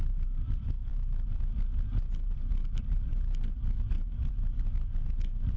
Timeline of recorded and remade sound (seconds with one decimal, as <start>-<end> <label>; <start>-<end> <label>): 0.0-5.6 recorded

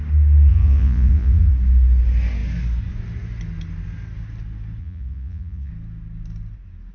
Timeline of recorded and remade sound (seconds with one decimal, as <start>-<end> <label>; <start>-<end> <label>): 0.0-0.5 recorded; 0.5-1.5 remade; 1.5-4.8 recorded; 4.8-5.7 remade; 5.7-6.9 recorded

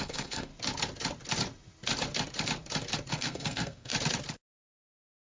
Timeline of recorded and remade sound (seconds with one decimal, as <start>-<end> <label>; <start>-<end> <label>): 0.0-0.5 remade; 0.5-3.1 recorded; 3.1-3.9 remade; 3.9-4.9 recorded; 4.9-5.4 remade

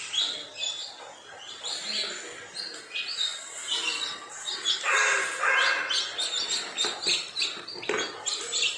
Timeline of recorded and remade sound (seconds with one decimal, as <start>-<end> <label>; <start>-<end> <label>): 0.0-8.8 recorded